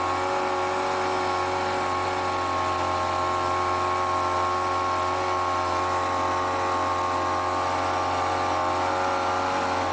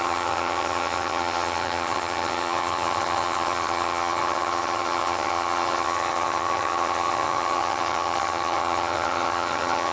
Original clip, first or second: first